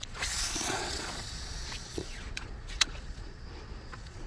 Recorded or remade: remade